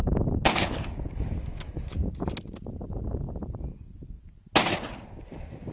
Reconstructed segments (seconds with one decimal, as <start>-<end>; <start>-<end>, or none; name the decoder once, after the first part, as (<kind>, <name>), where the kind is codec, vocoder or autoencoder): 1.4-2.0 (autoencoder, DAC-VAE)